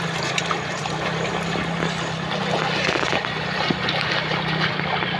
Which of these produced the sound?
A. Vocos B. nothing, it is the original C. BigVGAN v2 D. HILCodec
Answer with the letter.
B